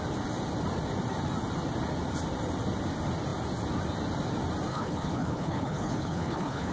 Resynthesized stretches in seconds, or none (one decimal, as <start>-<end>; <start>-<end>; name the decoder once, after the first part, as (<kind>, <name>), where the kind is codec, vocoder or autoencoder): 4.7-6.7 (codec, HILCodec)

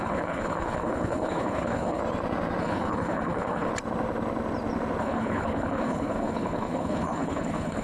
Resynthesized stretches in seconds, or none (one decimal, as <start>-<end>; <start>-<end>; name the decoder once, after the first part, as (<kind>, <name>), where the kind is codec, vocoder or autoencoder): 0.0-2.0 (codec, HILCodec); 2.6-3.7; 5.0-7.8